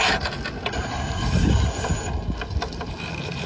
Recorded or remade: recorded